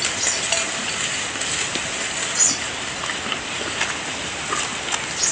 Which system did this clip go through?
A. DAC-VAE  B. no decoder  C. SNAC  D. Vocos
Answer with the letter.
B